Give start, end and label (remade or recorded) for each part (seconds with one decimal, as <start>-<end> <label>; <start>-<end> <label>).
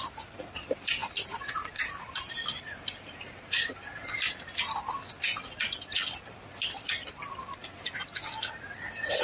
0.0-1.0 recorded; 1.0-3.7 remade; 3.7-9.2 recorded